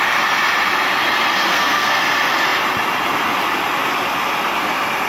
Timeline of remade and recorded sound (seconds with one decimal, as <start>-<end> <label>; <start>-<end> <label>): 0.0-1.4 recorded; 1.4-2.0 remade; 2.0-5.1 recorded